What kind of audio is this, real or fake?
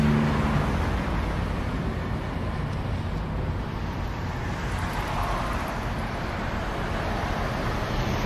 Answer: real